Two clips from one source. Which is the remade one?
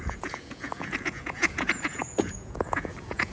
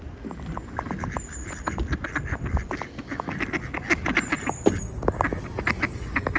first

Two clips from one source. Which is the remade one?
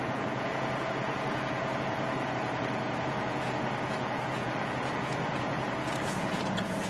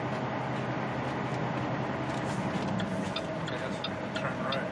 first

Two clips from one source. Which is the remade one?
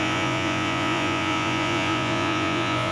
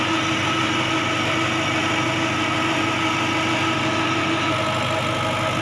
first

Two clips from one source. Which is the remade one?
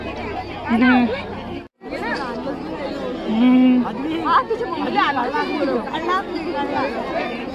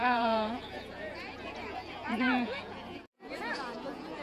second